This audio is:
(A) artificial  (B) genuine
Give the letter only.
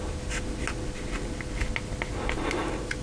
B